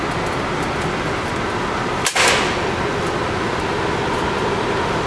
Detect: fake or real real